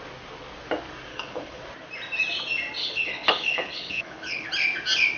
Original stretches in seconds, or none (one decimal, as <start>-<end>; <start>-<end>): 0.0-1.1; 1.6-2.8; 4.5-5.2